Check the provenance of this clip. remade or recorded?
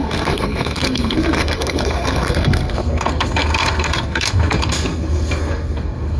remade